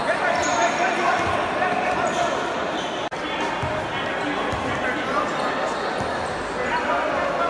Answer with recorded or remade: recorded